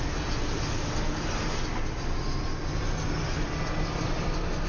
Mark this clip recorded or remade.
recorded